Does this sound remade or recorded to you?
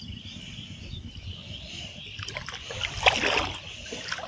recorded